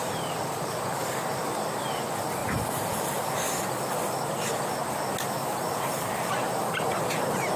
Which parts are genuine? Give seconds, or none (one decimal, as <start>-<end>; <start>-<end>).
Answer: 1.5-5.4; 6.3-7.6